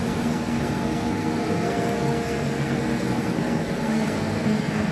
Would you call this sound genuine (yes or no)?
no